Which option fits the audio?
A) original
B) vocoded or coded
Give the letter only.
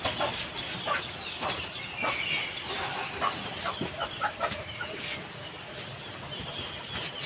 A